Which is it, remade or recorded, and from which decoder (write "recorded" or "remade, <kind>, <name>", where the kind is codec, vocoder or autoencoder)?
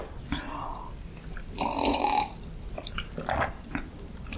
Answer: recorded